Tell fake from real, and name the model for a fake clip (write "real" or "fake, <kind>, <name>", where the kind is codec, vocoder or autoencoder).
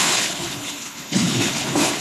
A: fake, codec, HILCodec